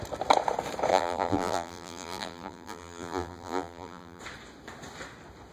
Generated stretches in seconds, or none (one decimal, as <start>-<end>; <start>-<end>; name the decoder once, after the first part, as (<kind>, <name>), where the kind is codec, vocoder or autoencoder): 0.9-4.2 (vocoder, BigVGAN v2)